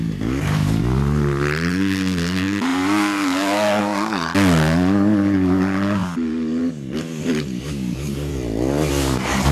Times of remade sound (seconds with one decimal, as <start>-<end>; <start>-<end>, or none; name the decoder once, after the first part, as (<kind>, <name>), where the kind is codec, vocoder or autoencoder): 0.0-0.8 (codec, DAC); 1.7-8.3; 8.9-9.5